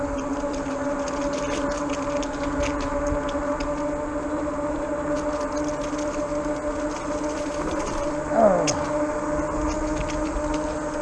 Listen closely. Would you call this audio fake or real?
real